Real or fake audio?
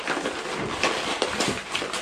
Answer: real